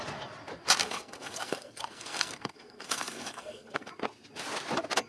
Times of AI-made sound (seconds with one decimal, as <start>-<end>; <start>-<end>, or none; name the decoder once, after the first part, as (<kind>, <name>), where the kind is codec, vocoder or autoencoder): 0.8-3.9 (codec, SNAC)